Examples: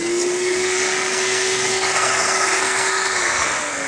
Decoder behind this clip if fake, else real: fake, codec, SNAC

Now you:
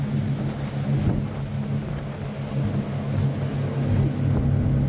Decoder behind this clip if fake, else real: real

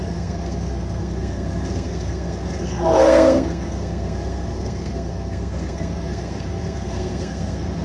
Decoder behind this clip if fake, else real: fake, codec, SNAC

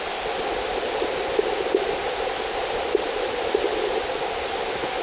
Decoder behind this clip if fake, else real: real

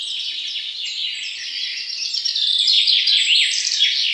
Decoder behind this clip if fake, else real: real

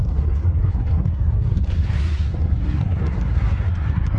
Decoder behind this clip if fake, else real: fake, codec, SNAC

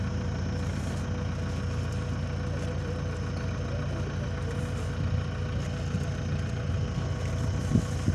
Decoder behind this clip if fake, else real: real